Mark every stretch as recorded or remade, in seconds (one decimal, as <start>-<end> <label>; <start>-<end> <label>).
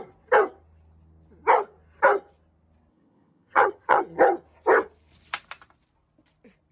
0.0-2.9 recorded; 2.9-4.0 remade; 4.0-6.7 recorded